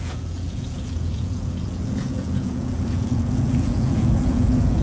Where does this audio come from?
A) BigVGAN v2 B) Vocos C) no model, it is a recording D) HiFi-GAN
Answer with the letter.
B